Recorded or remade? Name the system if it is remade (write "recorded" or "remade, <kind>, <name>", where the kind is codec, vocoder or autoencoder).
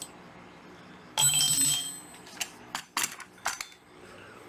recorded